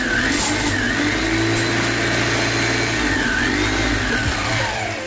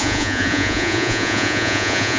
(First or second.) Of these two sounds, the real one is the first